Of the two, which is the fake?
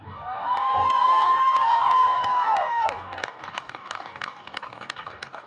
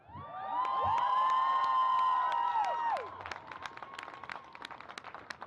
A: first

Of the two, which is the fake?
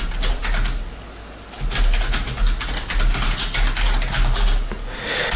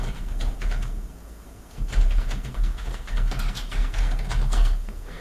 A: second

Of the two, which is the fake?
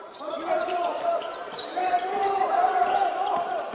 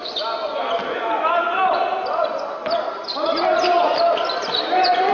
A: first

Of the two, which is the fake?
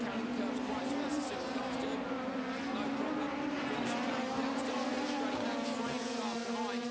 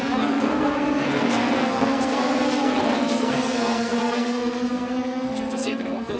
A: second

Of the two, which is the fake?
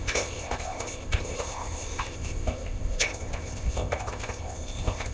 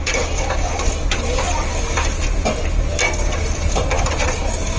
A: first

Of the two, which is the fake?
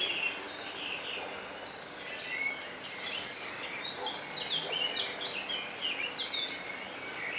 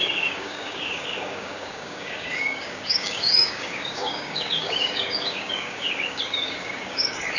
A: second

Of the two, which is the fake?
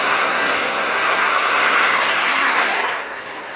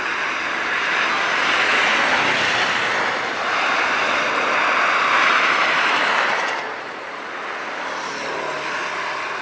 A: first